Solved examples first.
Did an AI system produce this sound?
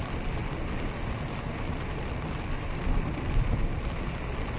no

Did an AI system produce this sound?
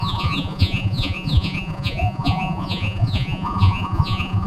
yes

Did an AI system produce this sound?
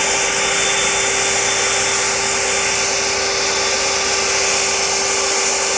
no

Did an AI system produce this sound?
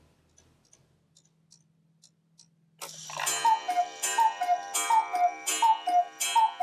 no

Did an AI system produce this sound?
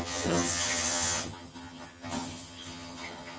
yes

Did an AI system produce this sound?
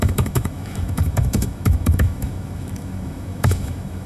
yes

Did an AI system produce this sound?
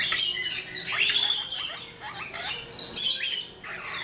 no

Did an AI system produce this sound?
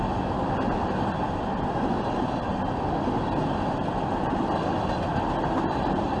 no